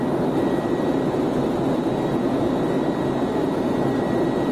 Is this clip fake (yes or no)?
no